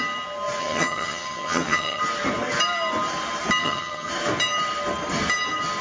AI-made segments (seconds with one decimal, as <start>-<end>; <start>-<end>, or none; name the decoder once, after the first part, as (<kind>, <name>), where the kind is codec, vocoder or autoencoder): 0.6-2.0 (vocoder, HiFi-GAN); 3.6-4.1